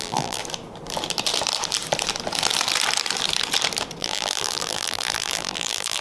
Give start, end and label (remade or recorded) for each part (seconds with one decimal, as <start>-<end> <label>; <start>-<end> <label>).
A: 0.0-0.4 remade; 0.4-4.0 recorded; 4.0-6.0 remade